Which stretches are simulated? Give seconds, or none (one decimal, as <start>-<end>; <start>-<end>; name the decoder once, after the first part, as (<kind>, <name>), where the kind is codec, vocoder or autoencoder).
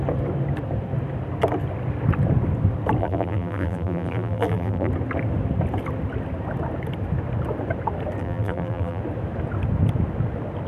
3.0-4.9 (vocoder, BigVGAN v2); 8.2-9.0